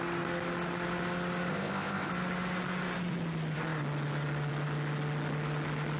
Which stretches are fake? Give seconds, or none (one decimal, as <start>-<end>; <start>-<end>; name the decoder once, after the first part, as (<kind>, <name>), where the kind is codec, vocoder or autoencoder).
1.5-2.1 (codec, ZipCodec)